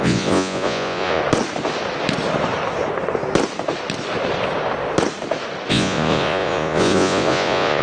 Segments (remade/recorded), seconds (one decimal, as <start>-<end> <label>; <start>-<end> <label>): 0.0-1.2 remade; 1.2-5.7 recorded; 5.7-7.8 remade